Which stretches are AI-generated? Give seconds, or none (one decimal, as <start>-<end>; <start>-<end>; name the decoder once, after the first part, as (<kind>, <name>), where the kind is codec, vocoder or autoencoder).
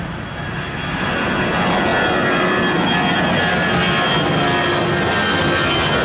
none